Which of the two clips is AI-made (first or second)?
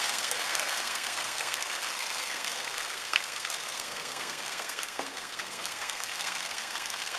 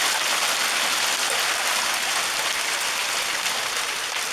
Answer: first